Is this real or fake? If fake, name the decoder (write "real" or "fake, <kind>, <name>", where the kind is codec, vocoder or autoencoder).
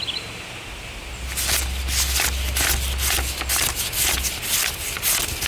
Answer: real